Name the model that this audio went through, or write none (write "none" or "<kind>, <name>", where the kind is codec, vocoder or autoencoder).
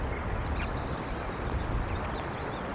none